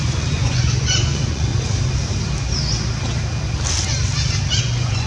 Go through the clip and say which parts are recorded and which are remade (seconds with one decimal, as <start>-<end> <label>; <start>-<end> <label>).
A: 0.0-1.5 remade; 1.5-4.6 recorded; 4.6-5.1 remade